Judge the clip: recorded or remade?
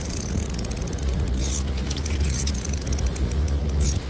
remade